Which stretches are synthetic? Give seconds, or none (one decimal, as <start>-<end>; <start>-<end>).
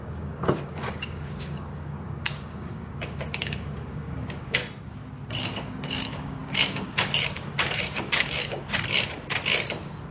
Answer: 0.0-4.6; 5.3-8.6